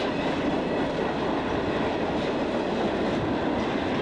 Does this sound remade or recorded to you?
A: recorded